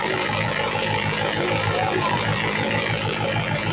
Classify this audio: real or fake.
fake